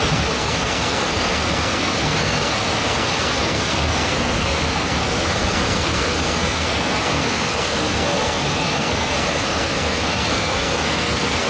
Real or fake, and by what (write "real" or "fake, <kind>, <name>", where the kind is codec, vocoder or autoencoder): fake, codec, SNAC